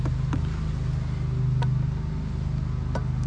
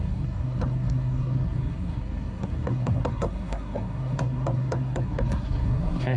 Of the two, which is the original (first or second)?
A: first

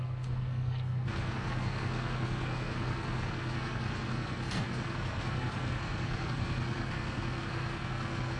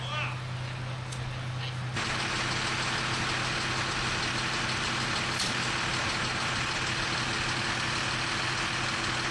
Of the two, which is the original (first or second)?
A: second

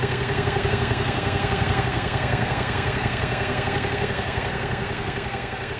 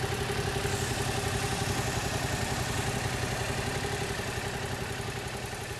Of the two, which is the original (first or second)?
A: second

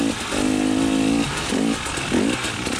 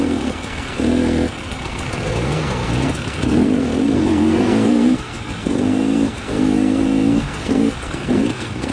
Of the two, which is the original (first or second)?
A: first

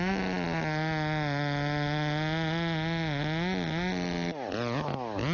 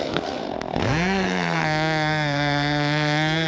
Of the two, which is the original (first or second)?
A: first